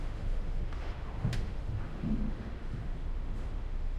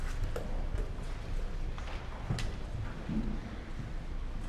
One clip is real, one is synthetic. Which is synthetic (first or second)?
first